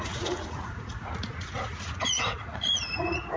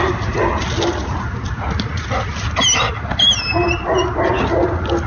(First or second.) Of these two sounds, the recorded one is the second